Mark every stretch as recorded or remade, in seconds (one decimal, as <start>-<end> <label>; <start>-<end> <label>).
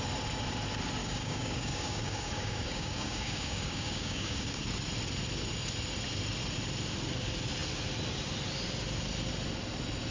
0.0-1.0 recorded; 1.0-4.6 remade; 4.6-10.1 recorded